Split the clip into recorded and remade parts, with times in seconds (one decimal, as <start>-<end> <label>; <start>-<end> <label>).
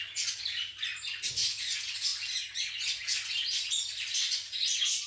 0.0-5.1 recorded